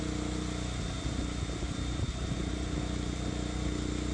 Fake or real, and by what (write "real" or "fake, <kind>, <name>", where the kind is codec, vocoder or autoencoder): real